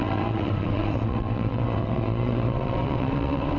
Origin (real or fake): fake